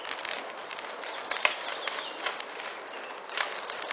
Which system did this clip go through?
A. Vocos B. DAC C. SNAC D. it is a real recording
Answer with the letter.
D